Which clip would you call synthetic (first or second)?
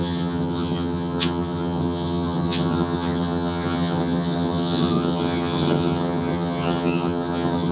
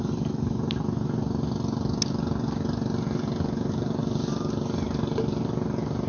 first